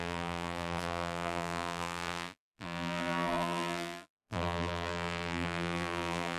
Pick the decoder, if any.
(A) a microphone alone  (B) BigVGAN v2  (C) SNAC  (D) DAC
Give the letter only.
B